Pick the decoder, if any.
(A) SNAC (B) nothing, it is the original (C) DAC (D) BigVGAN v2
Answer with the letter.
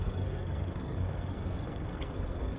A